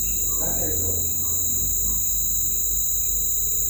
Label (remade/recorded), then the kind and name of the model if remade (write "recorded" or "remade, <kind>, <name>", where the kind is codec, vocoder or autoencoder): recorded